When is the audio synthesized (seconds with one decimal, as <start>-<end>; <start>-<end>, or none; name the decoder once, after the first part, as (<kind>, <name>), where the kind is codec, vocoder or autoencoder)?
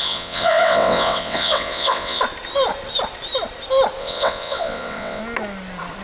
0.0-2.2 (vocoder, WaveNeXt); 4.0-5.2